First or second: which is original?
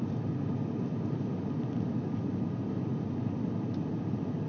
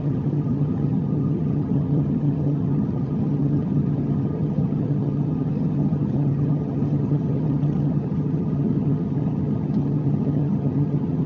first